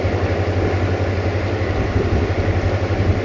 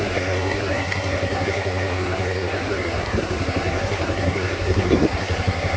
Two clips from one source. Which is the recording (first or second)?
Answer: first